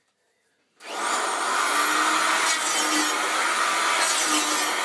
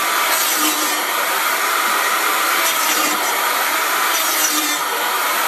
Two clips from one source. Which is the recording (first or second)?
first